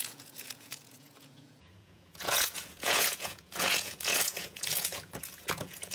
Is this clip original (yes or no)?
no